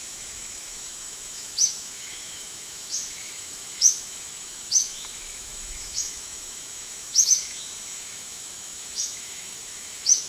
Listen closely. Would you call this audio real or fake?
fake